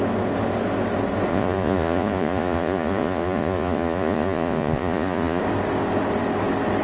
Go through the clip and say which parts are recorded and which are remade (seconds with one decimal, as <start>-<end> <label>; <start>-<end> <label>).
0.0-1.3 recorded; 1.3-5.4 remade; 5.4-6.8 recorded